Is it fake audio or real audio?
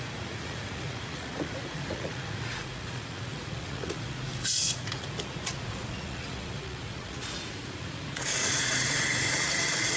fake